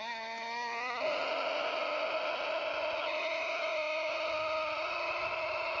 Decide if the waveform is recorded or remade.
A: recorded